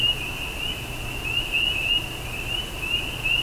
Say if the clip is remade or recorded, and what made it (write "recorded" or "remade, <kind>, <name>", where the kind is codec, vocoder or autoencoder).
recorded